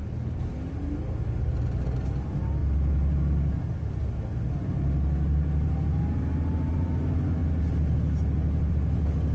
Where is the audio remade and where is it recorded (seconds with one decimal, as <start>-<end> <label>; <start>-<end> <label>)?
0.0-9.3 recorded